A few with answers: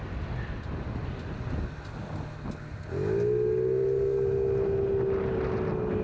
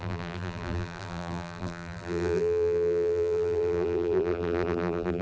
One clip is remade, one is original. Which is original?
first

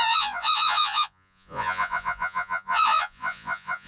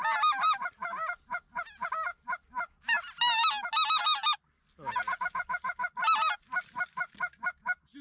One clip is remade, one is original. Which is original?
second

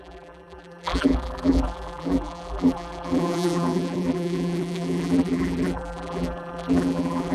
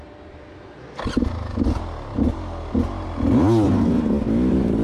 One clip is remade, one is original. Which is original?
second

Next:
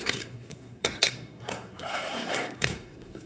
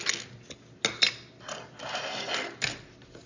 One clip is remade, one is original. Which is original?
second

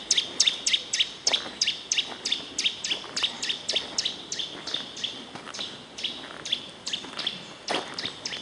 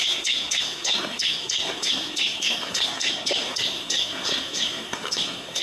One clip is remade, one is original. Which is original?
first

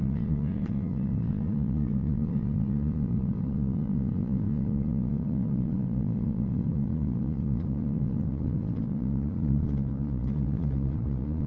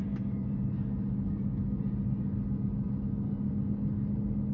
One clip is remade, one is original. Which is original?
second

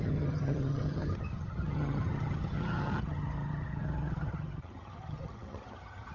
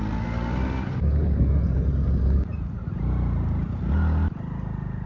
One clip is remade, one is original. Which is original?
second